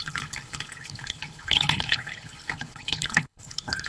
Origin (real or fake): fake